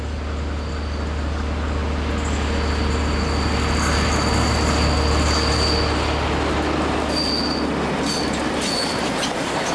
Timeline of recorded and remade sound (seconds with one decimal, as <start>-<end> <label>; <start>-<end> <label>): 0.0-9.7 recorded